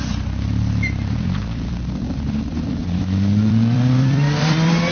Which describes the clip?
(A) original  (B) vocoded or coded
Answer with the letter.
B